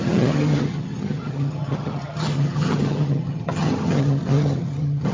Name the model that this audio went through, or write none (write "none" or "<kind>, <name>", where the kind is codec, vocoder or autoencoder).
vocoder, HiFi-GAN